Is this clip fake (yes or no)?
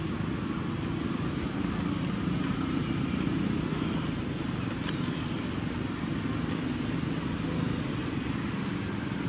no